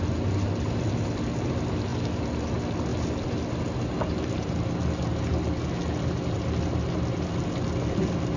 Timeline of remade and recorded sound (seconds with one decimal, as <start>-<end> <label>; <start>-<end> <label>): 0.0-1.9 recorded; 1.9-2.5 remade; 2.5-2.9 recorded; 2.9-4.7 remade; 4.7-8.4 recorded